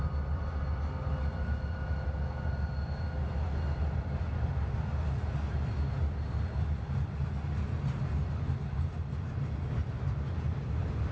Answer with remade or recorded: recorded